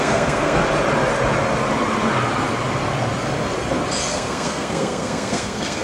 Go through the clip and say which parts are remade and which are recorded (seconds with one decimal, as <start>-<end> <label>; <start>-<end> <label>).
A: 0.0-0.6 remade; 0.6-4.1 recorded; 4.1-5.8 remade